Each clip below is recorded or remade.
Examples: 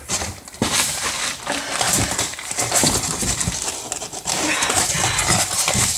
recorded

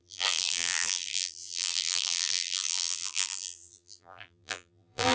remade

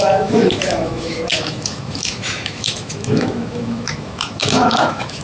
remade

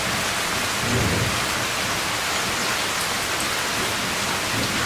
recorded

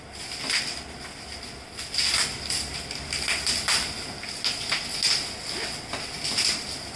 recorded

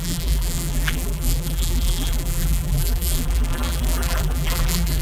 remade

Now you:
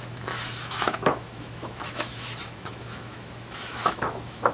remade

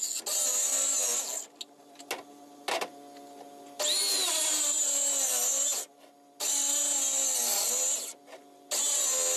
recorded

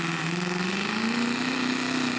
recorded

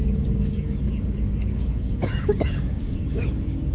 remade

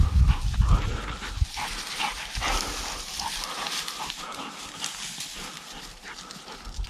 recorded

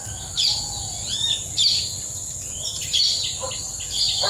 recorded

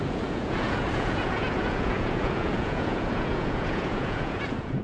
remade